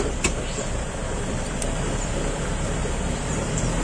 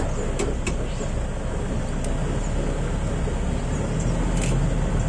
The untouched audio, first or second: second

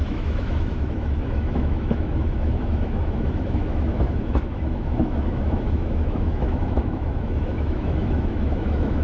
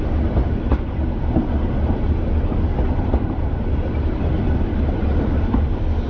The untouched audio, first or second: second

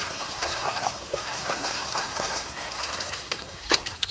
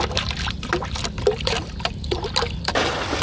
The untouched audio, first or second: second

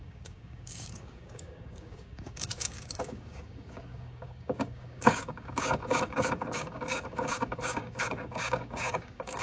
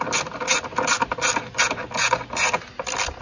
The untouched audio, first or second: second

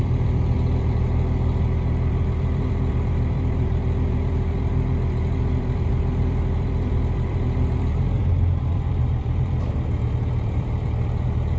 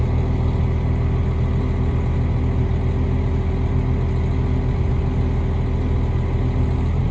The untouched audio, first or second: second